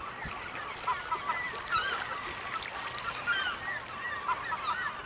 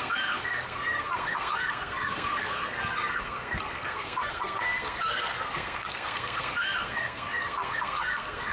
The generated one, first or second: second